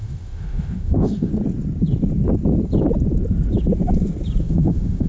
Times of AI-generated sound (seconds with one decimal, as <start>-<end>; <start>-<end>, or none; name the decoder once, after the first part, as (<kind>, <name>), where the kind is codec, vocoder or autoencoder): 0.0-1.3 (autoencoder, DAC-VAE); 4.4-5.1